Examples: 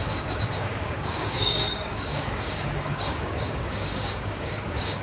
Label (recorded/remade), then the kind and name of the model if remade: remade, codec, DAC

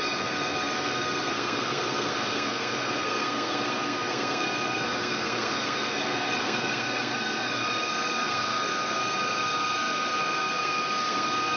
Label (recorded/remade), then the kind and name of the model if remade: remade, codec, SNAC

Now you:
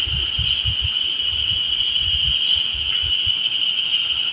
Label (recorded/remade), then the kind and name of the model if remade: recorded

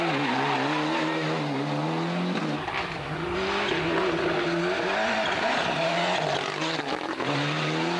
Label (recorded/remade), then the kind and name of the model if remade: recorded